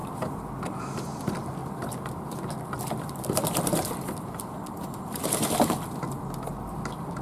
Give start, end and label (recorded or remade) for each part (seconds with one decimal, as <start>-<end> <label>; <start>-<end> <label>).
0.0-1.6 recorded; 1.6-4.6 remade; 4.6-7.2 recorded